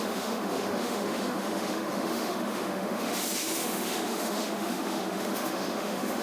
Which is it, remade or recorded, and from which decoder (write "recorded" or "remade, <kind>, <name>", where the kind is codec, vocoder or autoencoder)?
remade, autoencoder, DAC-VAE